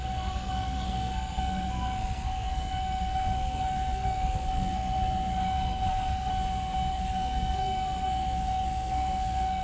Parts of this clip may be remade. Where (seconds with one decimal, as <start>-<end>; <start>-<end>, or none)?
0.0-6.3; 6.9-9.6